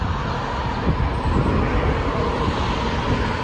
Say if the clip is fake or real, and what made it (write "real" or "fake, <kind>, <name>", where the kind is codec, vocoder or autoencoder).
real